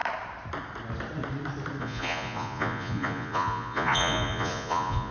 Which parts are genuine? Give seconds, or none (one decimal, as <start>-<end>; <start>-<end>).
0.0-1.8